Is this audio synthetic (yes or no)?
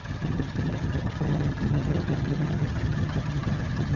yes